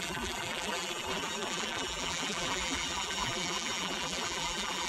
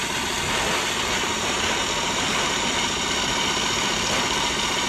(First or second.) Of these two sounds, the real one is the second